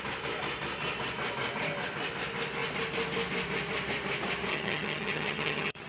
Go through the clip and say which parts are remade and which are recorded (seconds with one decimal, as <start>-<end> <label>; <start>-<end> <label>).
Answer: 0.0-4.5 recorded; 4.5-5.9 remade